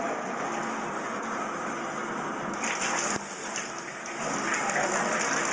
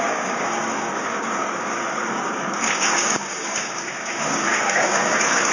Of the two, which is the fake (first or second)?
second